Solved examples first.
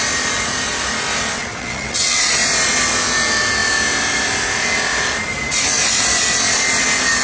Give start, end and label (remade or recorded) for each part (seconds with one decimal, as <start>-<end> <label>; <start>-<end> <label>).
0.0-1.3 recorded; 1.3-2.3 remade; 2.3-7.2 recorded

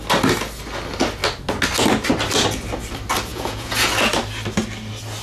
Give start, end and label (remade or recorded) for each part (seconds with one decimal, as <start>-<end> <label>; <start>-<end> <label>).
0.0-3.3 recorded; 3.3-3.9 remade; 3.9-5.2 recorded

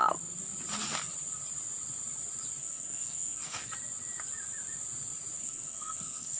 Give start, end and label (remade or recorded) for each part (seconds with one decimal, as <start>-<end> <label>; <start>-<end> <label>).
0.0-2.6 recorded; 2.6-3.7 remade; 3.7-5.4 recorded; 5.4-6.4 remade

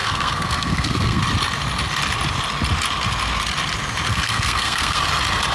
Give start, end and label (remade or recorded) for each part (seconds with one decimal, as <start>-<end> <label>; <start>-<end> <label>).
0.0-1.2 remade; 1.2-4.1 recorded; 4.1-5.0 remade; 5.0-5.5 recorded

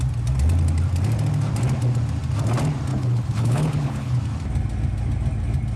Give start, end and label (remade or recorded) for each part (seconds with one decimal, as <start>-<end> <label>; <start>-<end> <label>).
0.0-2.9 recorded; 2.9-4.2 remade; 4.2-5.8 recorded